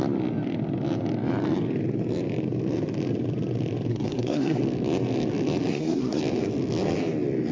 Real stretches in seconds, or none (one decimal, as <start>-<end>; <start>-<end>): 0.0-3.9; 4.6-5.7; 6.2-7.5